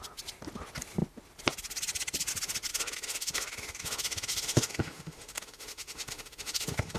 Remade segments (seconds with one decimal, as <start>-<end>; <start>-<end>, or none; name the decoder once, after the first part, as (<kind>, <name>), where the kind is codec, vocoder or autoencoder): 2.7-7.0 (autoencoder, DAC-VAE)